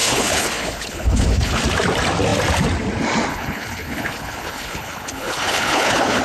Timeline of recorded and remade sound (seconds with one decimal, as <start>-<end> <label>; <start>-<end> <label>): 0.0-1.6 remade; 1.6-3.3 recorded; 3.3-6.2 remade

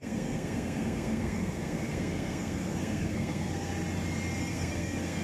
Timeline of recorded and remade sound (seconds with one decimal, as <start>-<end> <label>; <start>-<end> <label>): 0.0-3.7 remade; 3.7-4.4 recorded; 4.4-5.2 remade

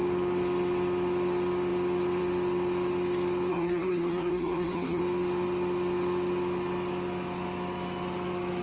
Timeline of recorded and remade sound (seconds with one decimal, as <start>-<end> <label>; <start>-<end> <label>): 0.0-3.5 recorded; 3.5-5.0 remade; 5.0-8.6 recorded

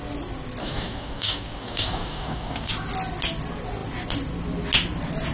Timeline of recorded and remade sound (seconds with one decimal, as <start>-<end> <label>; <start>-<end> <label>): 0.0-0.6 recorded; 0.6-2.7 remade; 2.7-5.3 recorded

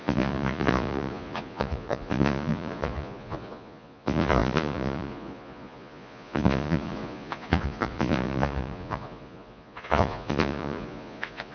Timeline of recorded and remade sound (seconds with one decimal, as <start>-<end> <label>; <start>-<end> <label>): 0.0-11.5 remade

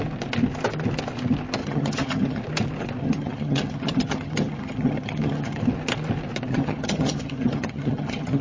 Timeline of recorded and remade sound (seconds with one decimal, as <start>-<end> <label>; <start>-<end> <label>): 0.0-1.6 recorded; 1.6-2.4 remade; 2.4-3.0 recorded; 3.0-5.6 remade; 5.6-6.5 recorded; 6.5-8.4 remade

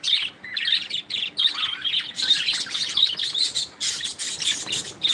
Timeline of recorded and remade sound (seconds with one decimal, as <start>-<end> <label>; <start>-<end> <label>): 0.0-5.1 recorded

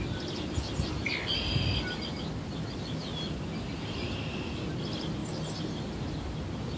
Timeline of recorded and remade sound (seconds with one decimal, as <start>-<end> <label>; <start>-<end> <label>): 0.0-6.8 recorded